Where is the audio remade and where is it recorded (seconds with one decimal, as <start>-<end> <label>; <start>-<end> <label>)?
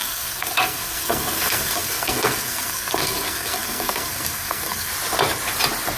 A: 0.0-4.9 remade; 4.9-6.0 recorded